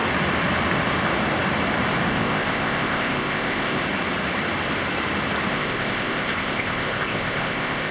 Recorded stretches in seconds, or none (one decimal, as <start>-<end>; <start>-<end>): 0.0-2.1; 3.8-5.5